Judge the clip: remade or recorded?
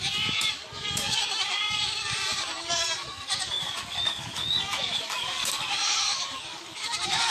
remade